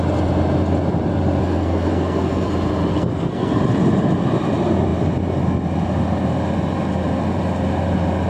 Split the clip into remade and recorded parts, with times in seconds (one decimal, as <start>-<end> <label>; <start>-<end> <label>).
0.0-1.4 recorded; 1.4-2.5 remade; 2.5-2.9 recorded; 2.9-3.6 remade; 3.6-8.3 recorded